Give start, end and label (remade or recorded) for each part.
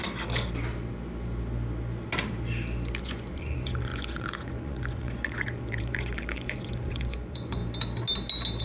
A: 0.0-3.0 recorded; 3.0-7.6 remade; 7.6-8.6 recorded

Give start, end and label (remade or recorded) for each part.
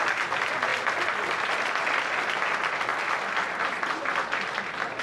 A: 0.0-5.0 recorded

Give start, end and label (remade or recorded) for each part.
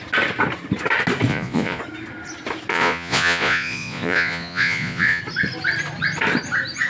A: 0.0-1.3 recorded; 1.3-1.8 remade; 1.8-2.7 recorded; 2.7-5.2 remade; 5.2-6.9 recorded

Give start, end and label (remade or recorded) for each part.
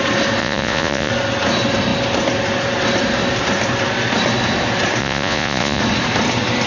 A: 0.0-0.4 recorded; 0.4-1.1 remade; 1.1-5.0 recorded; 5.0-5.8 remade; 5.8-6.7 recorded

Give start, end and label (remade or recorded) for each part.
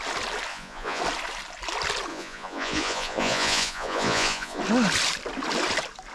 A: 0.0-0.5 recorded; 0.5-1.0 remade; 1.0-2.1 recorded; 2.1-4.6 remade; 4.6-6.1 recorded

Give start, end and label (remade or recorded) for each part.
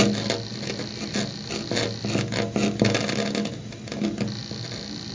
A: 0.0-5.1 recorded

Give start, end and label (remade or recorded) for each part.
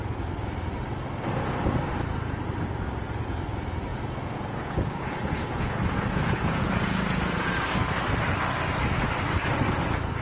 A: 0.0-3.9 recorded; 3.9-7.5 remade; 7.5-10.2 recorded